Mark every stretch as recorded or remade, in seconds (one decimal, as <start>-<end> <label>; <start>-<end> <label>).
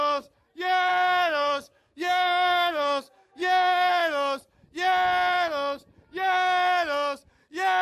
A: 0.0-0.9 recorded; 0.9-3.9 remade; 3.9-7.8 recorded